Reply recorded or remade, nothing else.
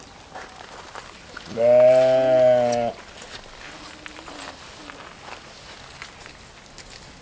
recorded